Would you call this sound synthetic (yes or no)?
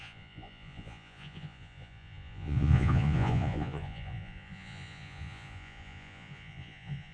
yes